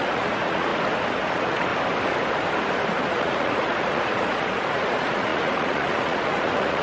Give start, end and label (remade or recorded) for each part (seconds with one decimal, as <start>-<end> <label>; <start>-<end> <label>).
0.0-0.7 remade; 0.7-1.2 recorded; 1.2-1.7 remade; 1.7-3.0 recorded; 3.0-6.8 remade